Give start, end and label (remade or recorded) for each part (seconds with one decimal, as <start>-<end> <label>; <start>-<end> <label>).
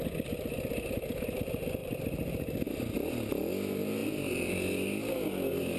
0.0-1.8 recorded; 1.8-2.8 remade; 2.8-5.8 recorded